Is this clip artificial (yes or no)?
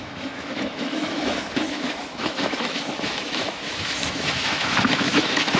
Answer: yes